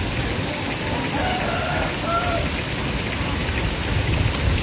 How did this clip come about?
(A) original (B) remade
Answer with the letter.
A